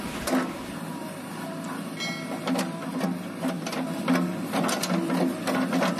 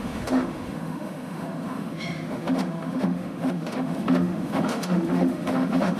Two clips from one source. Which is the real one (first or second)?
first